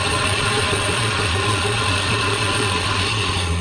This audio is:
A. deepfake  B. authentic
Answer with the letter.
A